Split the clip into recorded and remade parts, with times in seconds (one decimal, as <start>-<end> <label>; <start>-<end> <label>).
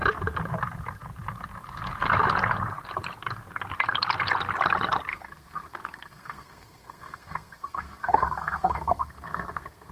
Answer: 0.0-5.1 recorded; 5.1-9.9 remade